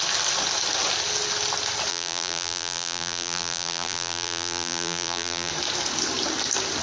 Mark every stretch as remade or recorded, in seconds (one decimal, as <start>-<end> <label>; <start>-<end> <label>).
0.0-1.9 recorded; 1.9-5.5 remade; 5.5-6.8 recorded